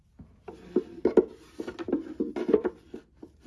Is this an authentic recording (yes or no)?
yes